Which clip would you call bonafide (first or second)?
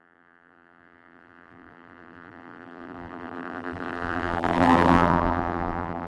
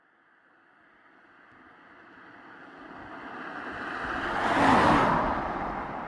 second